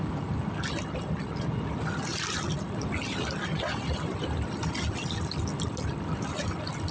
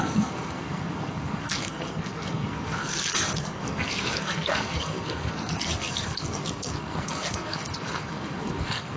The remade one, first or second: second